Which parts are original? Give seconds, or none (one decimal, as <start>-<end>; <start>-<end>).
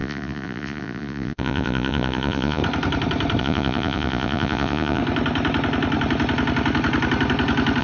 2.6-3.4; 5.0-7.8